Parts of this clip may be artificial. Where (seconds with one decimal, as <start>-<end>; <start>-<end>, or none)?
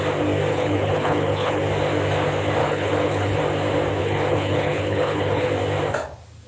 0.5-1.6; 2.6-3.4; 4.0-5.5